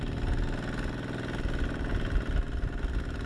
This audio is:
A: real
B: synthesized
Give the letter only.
A